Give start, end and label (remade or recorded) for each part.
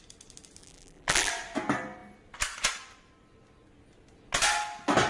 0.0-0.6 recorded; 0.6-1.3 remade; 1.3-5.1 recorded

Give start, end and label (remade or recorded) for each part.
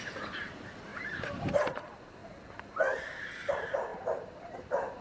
0.0-2.2 remade; 2.2-3.5 recorded; 3.5-5.0 remade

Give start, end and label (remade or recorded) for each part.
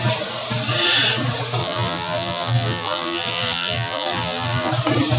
0.0-1.6 recorded; 1.6-4.7 remade; 4.7-5.2 recorded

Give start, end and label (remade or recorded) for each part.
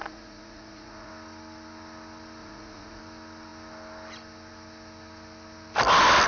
0.0-1.1 remade; 1.1-2.4 recorded; 2.4-3.0 remade; 3.0-6.3 recorded